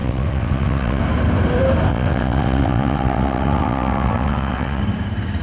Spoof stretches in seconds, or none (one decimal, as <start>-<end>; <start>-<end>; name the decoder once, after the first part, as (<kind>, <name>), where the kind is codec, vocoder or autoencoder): 0.0-1.0 (vocoder, WaveNeXt); 1.9-4.8